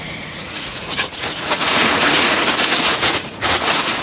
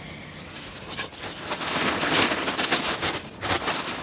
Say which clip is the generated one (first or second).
first